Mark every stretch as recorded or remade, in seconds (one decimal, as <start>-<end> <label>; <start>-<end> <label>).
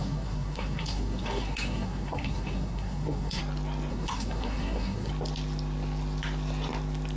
0.0-3.4 remade; 3.4-3.9 recorded; 3.9-5.1 remade; 5.1-7.2 recorded